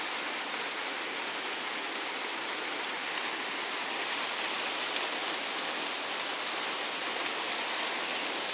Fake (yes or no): no